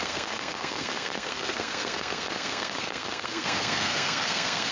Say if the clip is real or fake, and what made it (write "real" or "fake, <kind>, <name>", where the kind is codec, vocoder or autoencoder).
fake, codec, SNAC